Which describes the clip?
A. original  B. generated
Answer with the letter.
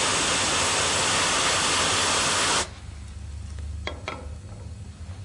A